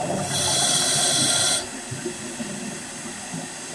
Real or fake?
real